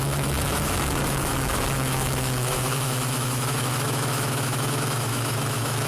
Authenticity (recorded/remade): remade